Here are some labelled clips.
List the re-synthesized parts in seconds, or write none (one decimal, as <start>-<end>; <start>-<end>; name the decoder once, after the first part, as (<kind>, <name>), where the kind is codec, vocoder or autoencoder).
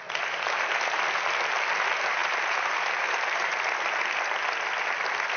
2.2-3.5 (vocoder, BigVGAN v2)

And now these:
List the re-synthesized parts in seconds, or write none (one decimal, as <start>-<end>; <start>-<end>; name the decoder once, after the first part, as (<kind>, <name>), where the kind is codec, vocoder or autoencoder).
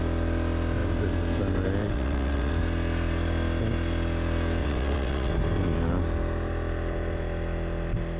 1.8-2.5 (vocoder, WaveNeXt); 4.6-5.3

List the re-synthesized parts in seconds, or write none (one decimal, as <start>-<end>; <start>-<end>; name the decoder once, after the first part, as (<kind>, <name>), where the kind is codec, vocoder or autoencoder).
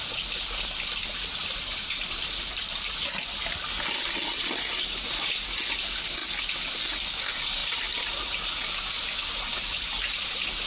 1.4-2.4 (vocoder, BigVGAN v2); 6.2-6.8; 7.6-10.2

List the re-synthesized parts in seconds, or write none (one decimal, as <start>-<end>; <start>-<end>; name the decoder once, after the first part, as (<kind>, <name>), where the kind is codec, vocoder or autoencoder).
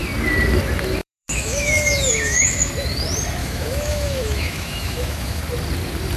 1.0-2.7 (autoencoder, DAC-VAE); 3.4-5.4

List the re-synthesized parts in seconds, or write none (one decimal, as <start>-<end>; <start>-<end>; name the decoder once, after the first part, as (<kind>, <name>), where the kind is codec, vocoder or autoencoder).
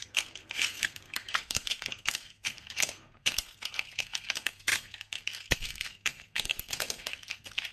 0.0-7.7 (codec, SNAC)